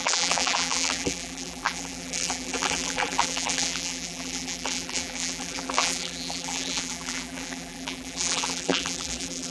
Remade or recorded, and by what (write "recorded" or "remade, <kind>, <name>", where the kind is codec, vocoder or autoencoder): remade, vocoder, BigVGAN v2